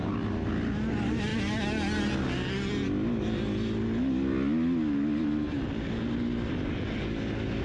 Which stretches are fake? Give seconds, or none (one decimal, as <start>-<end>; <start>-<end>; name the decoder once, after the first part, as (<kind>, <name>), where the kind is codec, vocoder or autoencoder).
none